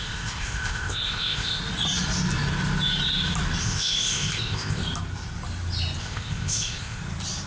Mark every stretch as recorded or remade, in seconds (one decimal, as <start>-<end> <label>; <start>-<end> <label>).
0.0-1.6 remade; 1.6-3.6 recorded; 3.6-4.8 remade; 4.8-6.0 recorded; 6.0-7.0 remade; 7.0-7.5 recorded